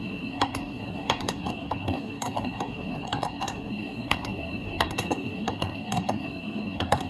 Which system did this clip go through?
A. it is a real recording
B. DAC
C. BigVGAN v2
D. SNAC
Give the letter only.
D